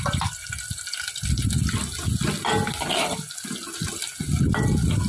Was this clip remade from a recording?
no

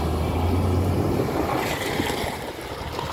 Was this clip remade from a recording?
no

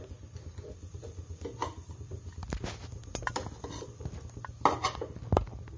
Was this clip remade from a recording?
no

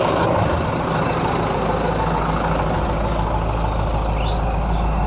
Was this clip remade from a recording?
no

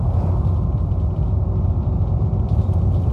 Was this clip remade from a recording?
no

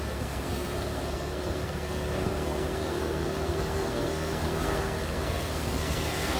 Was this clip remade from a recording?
yes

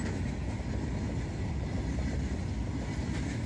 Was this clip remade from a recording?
no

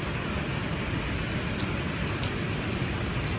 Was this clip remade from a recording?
no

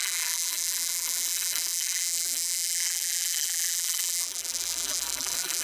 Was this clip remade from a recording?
yes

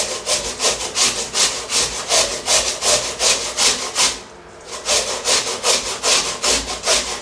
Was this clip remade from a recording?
no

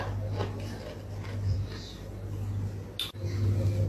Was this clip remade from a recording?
no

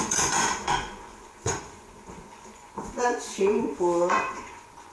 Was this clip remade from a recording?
yes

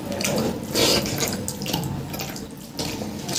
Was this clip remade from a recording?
no